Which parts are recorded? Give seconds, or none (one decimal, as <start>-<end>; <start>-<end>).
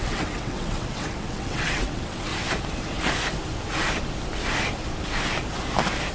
2.3-6.1